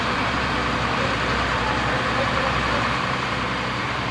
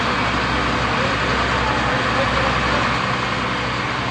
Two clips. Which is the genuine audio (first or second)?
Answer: second